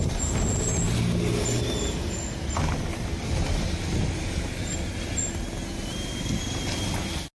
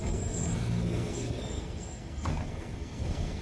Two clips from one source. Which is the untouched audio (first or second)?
first